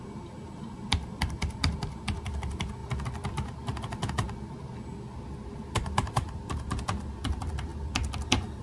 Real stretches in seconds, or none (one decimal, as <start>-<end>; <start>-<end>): 2.8-3.3; 4.7-5.5; 7.7-8.6